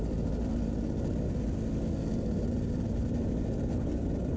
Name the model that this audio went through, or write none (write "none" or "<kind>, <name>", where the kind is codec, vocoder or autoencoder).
none